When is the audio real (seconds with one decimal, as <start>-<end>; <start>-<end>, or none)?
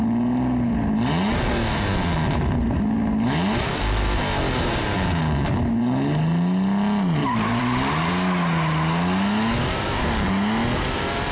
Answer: 0.0-7.2; 8.1-11.3